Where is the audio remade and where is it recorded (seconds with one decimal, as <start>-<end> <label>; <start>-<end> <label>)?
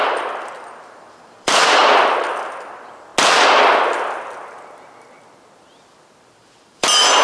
0.0-1.8 remade; 1.8-2.3 recorded; 2.3-3.1 remade; 3.1-6.2 recorded; 6.2-7.2 remade